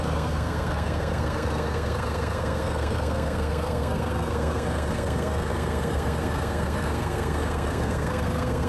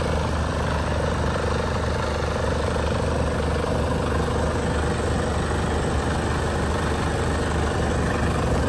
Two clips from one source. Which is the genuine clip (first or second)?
second